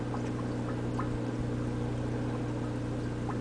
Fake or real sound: real